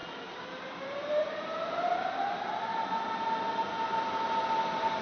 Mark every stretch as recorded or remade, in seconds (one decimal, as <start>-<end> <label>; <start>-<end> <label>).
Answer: 0.0-1.9 remade; 1.9-5.0 recorded